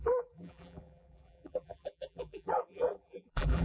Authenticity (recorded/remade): remade